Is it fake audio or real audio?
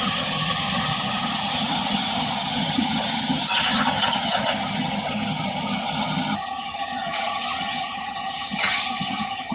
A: fake